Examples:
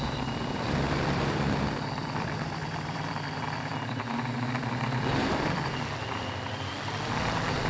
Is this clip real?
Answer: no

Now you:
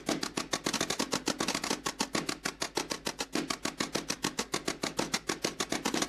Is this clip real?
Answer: yes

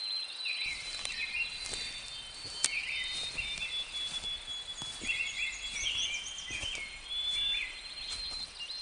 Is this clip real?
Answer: yes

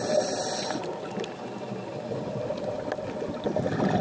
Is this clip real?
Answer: yes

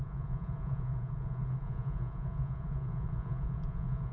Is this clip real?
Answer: no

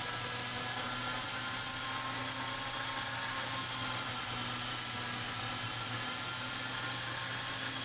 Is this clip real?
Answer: yes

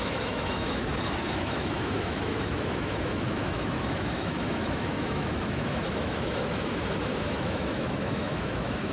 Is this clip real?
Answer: no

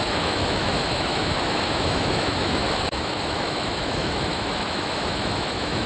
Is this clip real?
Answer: no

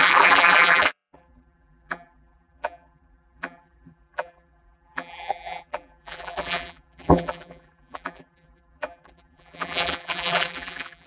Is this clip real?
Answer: no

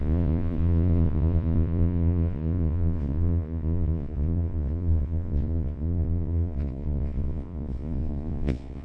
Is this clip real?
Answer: no